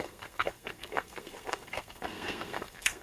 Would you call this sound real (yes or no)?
no